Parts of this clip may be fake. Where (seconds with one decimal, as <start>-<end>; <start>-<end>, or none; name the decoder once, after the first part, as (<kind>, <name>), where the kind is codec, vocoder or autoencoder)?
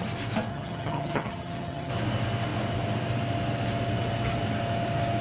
0.5-1.9 (vocoder, HiFi-GAN)